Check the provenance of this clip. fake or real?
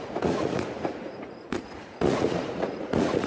fake